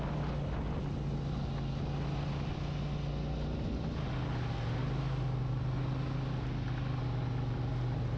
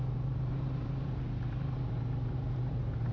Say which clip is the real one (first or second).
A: first